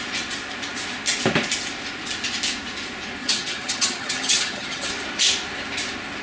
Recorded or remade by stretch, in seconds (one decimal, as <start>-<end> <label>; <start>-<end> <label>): 0.0-3.2 recorded; 3.2-4.9 remade; 4.9-6.2 recorded